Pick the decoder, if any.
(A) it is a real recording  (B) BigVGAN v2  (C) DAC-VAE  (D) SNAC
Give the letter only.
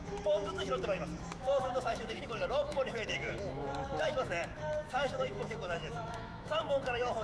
C